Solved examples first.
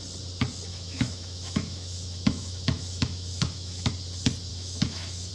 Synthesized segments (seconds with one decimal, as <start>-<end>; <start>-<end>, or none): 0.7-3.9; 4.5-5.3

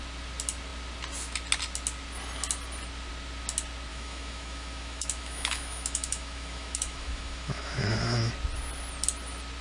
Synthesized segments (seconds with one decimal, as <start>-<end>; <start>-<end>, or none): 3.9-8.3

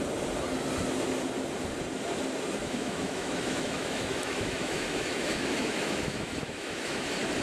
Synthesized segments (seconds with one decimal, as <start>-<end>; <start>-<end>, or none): 2.6-7.0

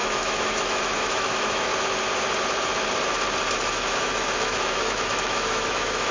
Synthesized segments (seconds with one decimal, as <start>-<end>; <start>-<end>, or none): 0.0-1.7; 3.7-6.1